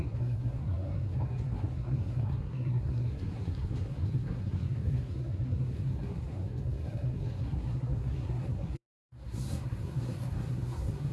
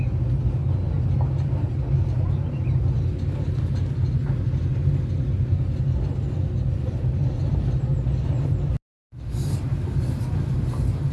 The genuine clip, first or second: second